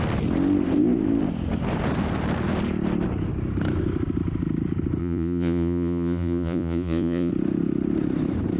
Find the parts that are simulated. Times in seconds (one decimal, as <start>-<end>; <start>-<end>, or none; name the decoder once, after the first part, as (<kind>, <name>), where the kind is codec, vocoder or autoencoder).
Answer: 5.0-7.3 (vocoder, Vocos)